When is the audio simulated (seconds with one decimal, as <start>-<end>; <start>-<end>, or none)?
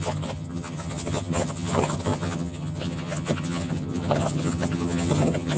0.0-5.6